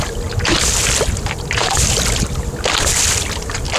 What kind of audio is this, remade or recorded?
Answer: recorded